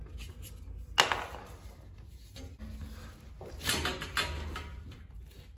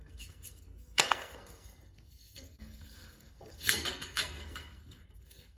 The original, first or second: first